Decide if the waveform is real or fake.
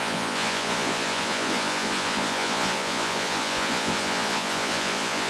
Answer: fake